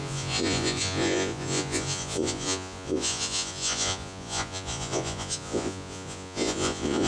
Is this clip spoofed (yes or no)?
yes